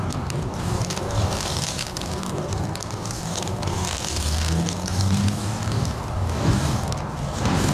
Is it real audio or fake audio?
fake